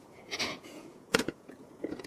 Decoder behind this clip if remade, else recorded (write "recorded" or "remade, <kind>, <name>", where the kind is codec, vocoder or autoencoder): remade, vocoder, Vocos